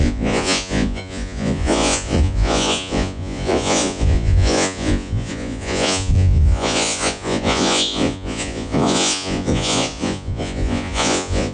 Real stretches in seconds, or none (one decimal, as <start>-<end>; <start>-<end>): none